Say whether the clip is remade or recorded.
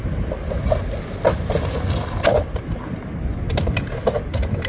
recorded